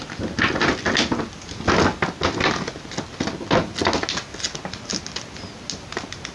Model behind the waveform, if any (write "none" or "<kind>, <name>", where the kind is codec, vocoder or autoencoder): none